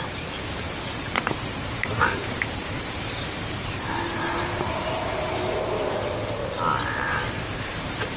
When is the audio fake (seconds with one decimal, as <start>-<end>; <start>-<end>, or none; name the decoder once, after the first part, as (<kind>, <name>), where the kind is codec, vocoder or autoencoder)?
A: 0.0-6.4 (vocoder, BigVGAN v2); 6.9-8.2